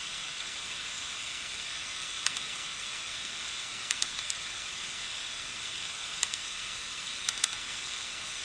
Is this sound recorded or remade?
remade